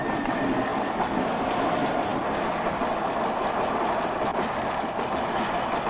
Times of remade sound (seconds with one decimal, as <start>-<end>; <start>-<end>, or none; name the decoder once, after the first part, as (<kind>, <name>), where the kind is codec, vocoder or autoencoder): none

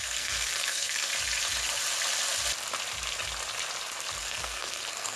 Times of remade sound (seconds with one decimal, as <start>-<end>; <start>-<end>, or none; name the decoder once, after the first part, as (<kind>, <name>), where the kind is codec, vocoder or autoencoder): 0.0-1.1 (codec, SNAC); 4.2-5.2

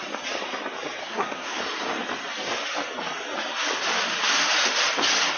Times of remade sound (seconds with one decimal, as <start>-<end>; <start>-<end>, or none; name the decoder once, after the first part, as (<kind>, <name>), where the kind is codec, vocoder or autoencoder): 1.0-1.6 (codec, SNAC)

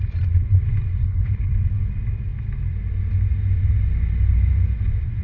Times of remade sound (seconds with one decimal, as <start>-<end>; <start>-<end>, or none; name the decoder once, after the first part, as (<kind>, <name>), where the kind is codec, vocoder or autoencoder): 1.0-1.5 (codec, HILCodec)

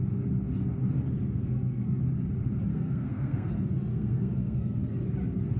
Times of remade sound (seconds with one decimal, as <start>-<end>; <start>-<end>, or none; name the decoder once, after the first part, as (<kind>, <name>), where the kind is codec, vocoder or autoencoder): 1.4-2.0 (codec, SNAC); 2.7-3.5; 3.9-4.8

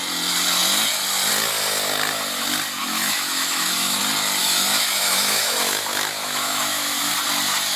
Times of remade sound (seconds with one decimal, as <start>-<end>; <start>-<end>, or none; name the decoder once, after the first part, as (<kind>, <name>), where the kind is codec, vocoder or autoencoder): 2.8-4.0 (autoencoder, DAC-VAE); 4.4-7.1